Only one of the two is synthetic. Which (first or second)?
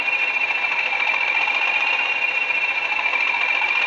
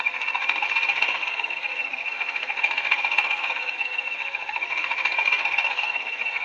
second